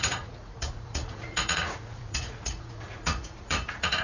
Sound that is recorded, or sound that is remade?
remade